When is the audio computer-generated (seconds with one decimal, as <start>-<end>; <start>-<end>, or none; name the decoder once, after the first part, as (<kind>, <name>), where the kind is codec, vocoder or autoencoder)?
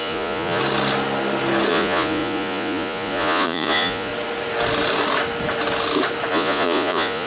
0.0-0.6 (vocoder, Vocos); 1.7-4.1; 6.3-7.3